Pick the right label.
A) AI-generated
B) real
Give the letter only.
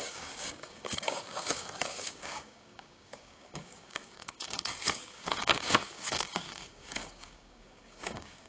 A